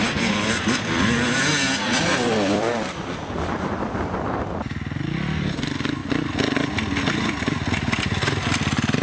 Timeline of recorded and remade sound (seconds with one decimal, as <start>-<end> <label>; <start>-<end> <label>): 0.0-1.5 remade; 1.5-2.0 recorded; 2.0-2.7 remade; 2.7-3.3 recorded; 3.3-6.0 remade; 6.0-9.0 recorded